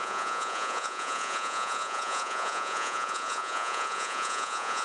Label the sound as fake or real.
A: fake